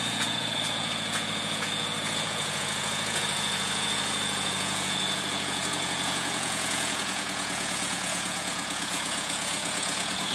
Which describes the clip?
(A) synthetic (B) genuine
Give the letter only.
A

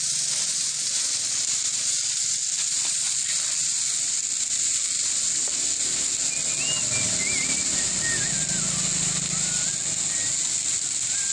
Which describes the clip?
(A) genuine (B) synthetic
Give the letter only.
A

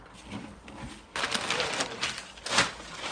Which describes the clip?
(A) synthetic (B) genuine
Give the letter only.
B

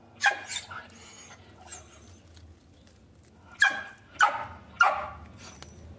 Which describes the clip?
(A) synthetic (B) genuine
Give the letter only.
B